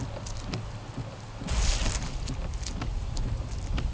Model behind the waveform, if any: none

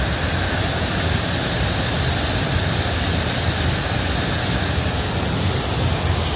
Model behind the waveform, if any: none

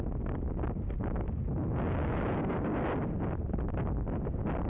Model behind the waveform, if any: none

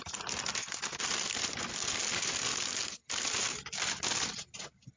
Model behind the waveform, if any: none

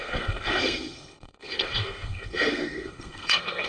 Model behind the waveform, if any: codec, SNAC